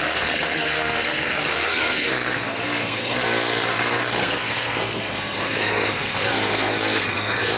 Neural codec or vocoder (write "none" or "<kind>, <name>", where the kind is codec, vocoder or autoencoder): codec, SNAC